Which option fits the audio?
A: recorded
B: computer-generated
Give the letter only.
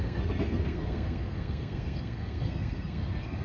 B